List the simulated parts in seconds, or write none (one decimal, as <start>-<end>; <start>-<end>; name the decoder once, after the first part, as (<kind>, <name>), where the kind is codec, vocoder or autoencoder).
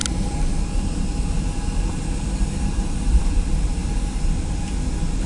none